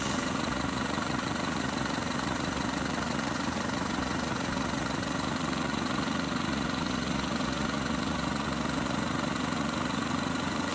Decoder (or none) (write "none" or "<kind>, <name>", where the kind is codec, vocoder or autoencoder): vocoder, Vocos